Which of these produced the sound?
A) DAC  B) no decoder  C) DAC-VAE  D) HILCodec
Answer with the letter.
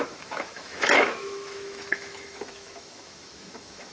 C